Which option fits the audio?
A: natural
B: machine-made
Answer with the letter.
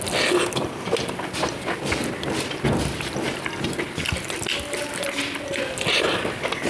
A